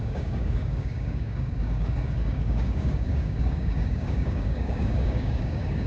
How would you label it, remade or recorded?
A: remade